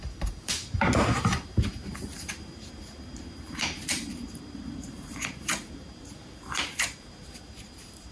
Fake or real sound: fake